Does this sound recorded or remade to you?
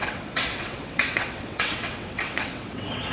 remade